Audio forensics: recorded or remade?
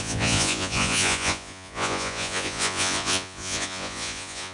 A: remade